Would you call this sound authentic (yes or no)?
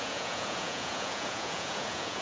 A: no